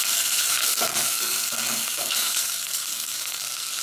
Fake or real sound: fake